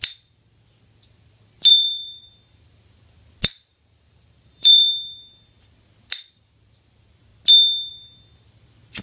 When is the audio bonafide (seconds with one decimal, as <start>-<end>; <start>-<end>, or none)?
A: 0.0-1.7; 2.3-3.7; 4.9-9.0